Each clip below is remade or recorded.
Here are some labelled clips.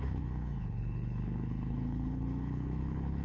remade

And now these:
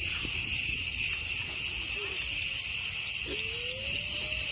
recorded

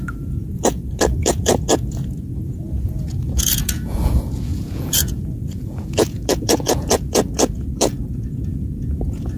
remade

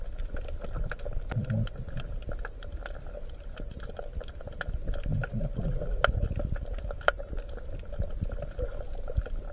recorded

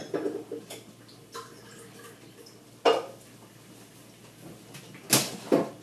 recorded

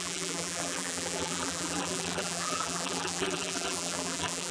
remade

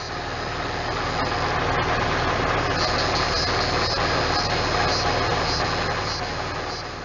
recorded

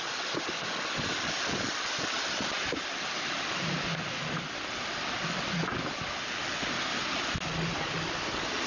recorded